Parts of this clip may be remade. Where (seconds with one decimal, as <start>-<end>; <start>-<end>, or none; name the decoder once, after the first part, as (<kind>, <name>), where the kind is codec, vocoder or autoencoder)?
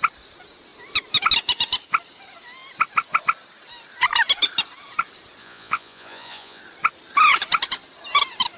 5.4-6.6 (vocoder, Vocos)